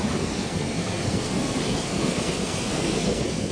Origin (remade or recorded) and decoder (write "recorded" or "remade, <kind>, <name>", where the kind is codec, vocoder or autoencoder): remade, codec, SNAC